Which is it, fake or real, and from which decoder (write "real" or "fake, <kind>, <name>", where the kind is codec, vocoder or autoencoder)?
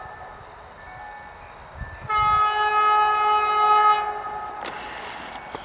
real